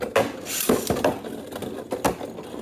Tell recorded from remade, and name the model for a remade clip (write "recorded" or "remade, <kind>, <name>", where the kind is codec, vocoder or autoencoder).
recorded